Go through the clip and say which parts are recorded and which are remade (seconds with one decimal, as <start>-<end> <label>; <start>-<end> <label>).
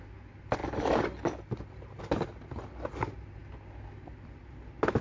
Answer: 0.0-5.0 recorded